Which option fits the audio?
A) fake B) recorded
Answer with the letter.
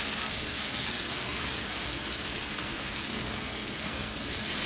A